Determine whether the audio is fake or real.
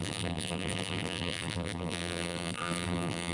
fake